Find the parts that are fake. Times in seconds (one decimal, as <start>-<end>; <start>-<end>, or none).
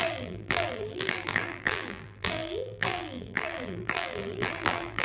0.0-5.0